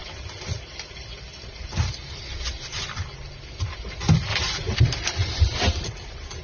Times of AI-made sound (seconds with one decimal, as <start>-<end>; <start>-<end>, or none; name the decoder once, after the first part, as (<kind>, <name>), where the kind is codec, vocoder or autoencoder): none